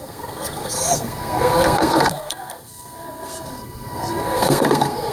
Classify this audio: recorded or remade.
remade